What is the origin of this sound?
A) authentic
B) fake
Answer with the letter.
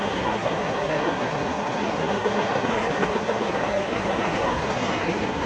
B